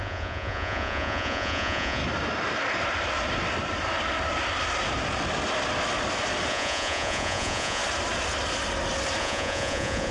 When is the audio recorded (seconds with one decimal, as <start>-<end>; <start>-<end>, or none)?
2.0-6.5; 7.8-9.2